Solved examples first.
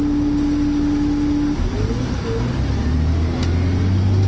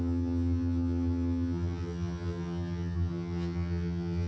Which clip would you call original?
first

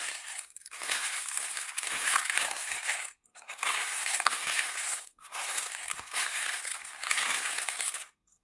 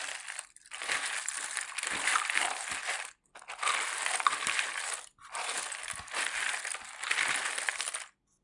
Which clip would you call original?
second